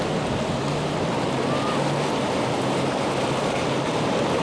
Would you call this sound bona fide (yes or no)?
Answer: yes